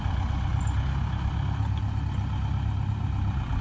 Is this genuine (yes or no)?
yes